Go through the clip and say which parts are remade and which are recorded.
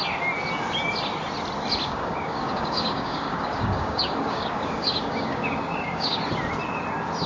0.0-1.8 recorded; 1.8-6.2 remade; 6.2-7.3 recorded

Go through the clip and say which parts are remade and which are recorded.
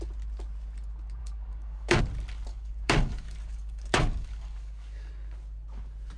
0.0-1.2 recorded; 1.2-2.0 remade; 2.0-2.5 recorded; 2.5-5.1 remade; 5.1-6.2 recorded